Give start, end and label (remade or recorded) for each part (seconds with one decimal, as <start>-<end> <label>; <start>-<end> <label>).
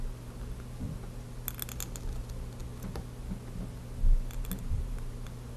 0.0-5.6 recorded